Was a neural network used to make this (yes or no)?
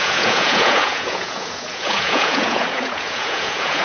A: yes